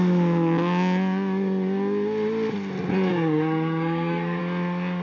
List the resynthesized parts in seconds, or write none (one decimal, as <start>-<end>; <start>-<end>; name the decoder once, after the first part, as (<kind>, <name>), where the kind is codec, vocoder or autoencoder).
3.1-4.4 (codec, SNAC)